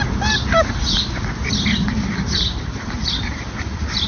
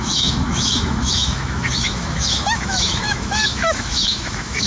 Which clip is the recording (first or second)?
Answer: first